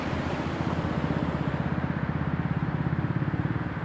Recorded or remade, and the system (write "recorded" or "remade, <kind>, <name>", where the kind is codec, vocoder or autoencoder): recorded